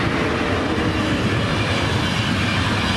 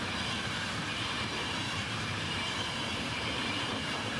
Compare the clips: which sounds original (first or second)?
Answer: first